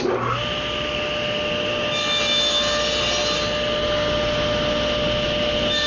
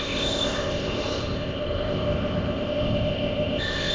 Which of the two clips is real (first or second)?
first